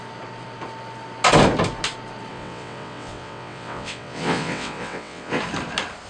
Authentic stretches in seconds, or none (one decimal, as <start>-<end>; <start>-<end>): 0.0-2.3; 5.4-6.1